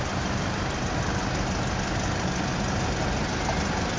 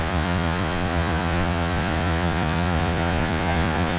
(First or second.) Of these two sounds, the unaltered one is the first